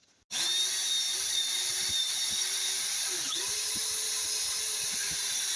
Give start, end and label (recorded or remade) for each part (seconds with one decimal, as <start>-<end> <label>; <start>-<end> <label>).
0.0-1.1 recorded; 1.1-3.4 remade; 3.4-5.6 recorded